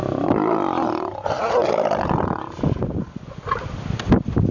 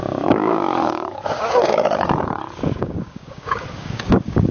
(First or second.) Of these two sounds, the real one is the first